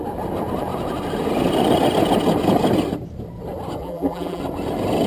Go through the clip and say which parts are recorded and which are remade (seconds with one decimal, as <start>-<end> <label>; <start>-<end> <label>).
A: 0.0-3.8 recorded; 3.8-4.4 remade; 4.4-5.1 recorded

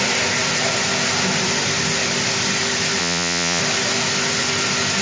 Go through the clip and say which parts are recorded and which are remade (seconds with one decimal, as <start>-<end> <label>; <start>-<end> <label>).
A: 0.0-3.0 recorded; 3.0-3.6 remade; 3.6-5.0 recorded

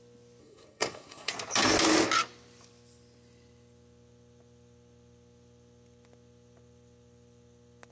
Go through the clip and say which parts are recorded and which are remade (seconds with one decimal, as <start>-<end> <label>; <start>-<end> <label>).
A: 0.0-0.4 recorded; 0.4-1.3 remade; 1.3-7.9 recorded

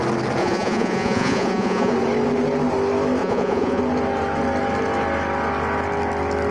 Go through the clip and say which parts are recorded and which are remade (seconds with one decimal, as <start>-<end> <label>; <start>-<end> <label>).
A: 0.0-0.4 recorded; 0.4-1.9 remade; 1.9-3.2 recorded; 3.2-3.8 remade; 3.8-6.5 recorded

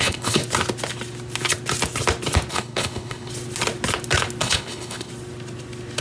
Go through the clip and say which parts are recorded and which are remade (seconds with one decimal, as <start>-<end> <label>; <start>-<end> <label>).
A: 0.0-0.4 remade; 0.4-2.5 recorded; 2.5-3.3 remade; 3.3-4.4 recorded; 4.4-5.1 remade; 5.1-6.0 recorded

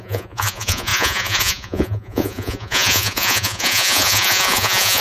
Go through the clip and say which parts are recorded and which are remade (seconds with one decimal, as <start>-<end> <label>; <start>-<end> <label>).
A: 0.0-5.0 remade